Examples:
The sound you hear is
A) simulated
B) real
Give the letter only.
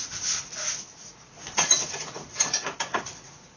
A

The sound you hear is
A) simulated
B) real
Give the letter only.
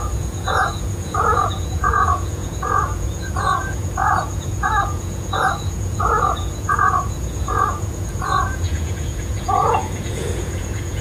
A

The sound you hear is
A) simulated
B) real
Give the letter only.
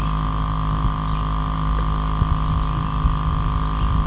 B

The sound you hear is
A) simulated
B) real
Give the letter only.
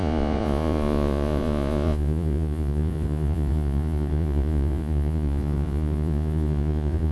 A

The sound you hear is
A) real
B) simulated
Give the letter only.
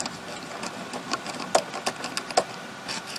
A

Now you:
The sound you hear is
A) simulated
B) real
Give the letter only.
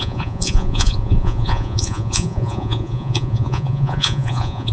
A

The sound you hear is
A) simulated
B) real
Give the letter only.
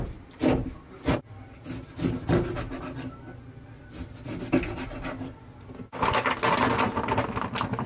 B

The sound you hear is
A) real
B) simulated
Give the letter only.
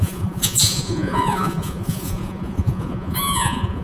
B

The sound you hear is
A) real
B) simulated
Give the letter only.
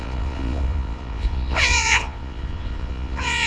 B